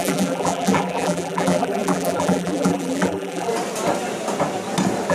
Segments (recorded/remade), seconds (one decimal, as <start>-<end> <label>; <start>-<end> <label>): 0.0-3.5 remade; 3.5-5.1 recorded